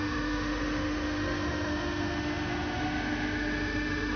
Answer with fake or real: fake